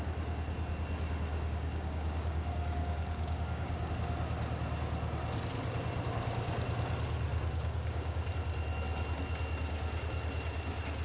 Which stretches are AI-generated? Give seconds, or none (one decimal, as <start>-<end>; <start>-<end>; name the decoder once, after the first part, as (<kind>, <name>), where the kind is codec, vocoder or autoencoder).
1.3-3.9 (codec, DAC); 7.3-8.3